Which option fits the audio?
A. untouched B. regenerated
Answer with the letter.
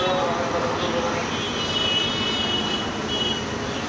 A